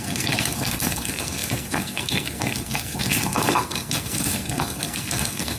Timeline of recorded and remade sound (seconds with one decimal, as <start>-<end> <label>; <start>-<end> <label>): 0.0-5.6 remade